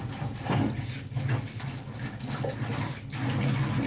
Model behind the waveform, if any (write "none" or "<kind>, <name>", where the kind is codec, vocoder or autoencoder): none